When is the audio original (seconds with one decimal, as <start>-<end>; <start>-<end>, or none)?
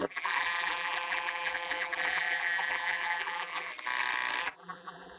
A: 3.7-4.4